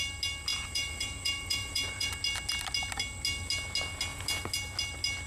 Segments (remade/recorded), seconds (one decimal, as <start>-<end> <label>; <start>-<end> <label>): 0.0-0.5 recorded; 0.5-2.1 remade; 2.1-5.3 recorded